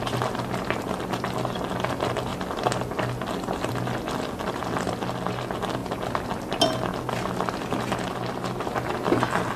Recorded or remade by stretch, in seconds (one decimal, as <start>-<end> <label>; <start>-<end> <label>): 0.0-9.6 recorded

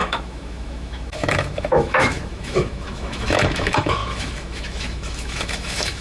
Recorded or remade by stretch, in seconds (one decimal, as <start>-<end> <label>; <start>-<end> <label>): 0.0-6.0 remade

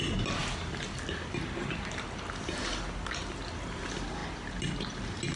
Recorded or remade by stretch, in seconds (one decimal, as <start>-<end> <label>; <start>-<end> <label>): 0.0-5.4 recorded